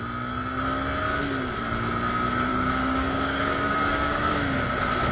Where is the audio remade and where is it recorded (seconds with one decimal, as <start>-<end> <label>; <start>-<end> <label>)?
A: 0.0-2.5 recorded; 2.5-4.3 remade; 4.3-5.1 recorded